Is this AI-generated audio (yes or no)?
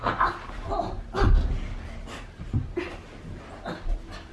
no